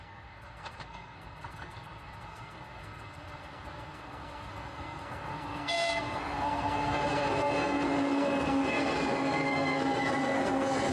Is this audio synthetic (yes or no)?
yes